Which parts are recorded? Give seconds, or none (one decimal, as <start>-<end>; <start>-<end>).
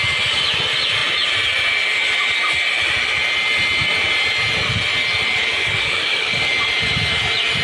0.0-5.3; 6.5-7.6